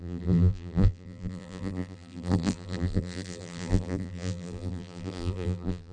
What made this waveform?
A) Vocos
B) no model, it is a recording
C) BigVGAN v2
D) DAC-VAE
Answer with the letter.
C